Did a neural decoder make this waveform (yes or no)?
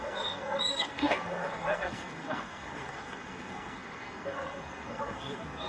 yes